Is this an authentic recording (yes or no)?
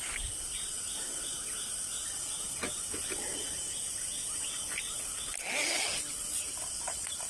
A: yes